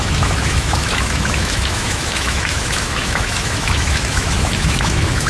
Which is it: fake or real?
fake